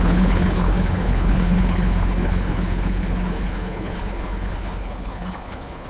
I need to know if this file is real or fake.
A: fake